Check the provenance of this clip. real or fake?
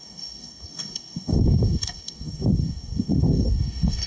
fake